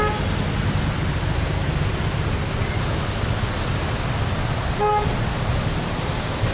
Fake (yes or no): no